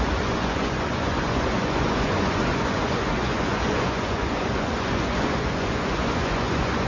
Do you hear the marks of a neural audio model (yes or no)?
yes